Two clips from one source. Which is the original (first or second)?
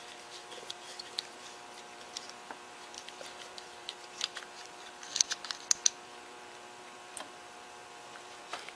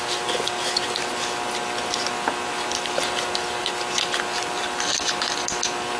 second